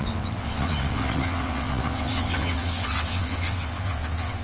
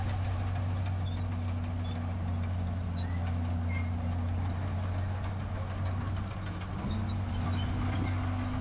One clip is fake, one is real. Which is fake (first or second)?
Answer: first